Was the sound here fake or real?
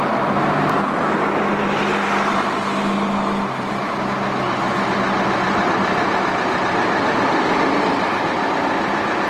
real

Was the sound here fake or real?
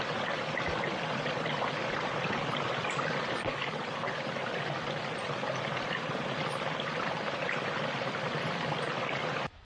real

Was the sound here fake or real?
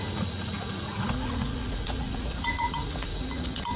fake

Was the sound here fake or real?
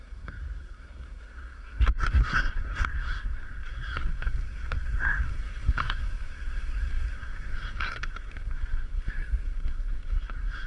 fake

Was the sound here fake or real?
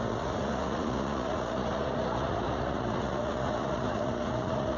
fake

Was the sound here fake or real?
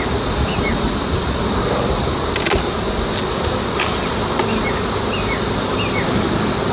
real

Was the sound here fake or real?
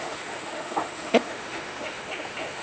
fake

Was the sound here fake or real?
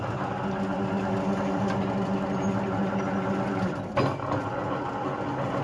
real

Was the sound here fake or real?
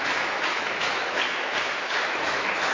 fake